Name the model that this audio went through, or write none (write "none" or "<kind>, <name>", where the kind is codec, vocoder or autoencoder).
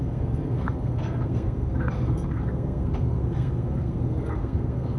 codec, SNAC